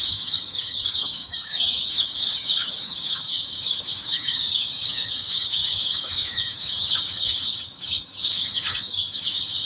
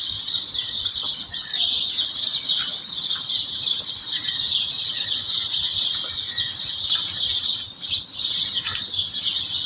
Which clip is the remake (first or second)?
first